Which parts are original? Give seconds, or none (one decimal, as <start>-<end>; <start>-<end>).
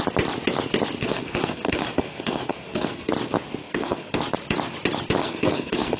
0.0-1.0; 3.1-3.6; 4.2-5.2